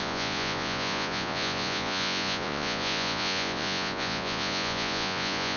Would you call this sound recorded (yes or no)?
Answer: no